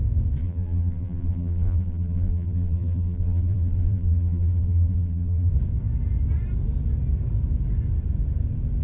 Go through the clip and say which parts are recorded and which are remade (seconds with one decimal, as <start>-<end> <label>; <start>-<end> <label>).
0.0-0.4 recorded; 0.4-5.5 remade; 5.5-8.8 recorded